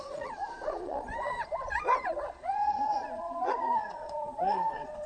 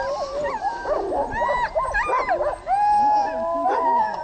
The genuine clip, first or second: second